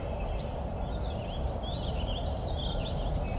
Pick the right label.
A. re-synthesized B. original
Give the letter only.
B